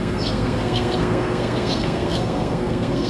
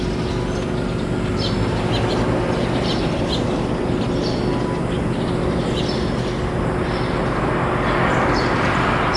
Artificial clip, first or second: first